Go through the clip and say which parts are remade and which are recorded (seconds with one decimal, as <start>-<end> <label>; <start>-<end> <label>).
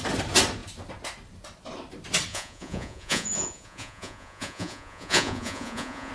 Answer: 0.0-2.3 recorded; 2.3-6.1 remade